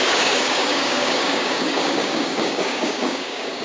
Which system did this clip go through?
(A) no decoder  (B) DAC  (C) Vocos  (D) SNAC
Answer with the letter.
B